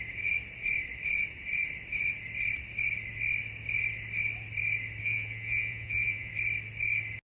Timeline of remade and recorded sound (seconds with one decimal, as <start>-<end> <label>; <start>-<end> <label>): 0.0-5.0 recorded; 5.0-6.3 remade; 6.3-7.3 recorded